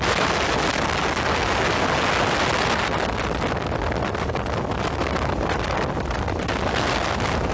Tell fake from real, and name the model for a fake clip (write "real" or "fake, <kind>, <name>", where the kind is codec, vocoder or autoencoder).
real